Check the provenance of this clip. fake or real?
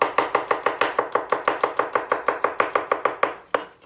real